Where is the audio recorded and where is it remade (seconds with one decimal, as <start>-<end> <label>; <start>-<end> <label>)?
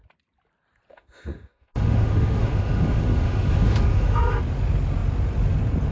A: 0.0-0.9 recorded; 0.9-4.4 remade; 4.4-5.9 recorded